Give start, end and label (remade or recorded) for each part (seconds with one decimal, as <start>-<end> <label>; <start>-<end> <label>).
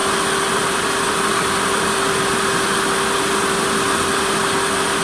0.0-5.0 recorded